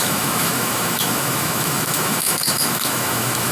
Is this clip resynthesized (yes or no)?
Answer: yes